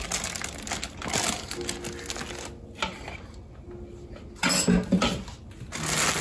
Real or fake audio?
real